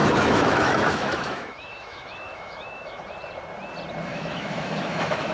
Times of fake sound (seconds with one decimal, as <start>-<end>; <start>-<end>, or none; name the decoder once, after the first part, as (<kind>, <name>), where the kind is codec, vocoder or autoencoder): 0.0-3.0 (autoencoder, DAC-VAE); 4.1-5.3